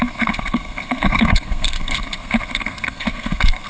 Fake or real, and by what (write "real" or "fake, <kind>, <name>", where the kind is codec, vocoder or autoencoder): fake, codec, SNAC